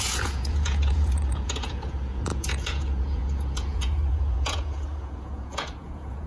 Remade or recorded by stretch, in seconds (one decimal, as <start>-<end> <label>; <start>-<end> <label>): 0.0-6.3 remade